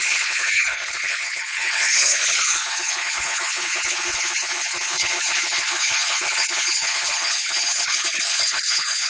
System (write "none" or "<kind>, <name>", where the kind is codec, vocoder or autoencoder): codec, HILCodec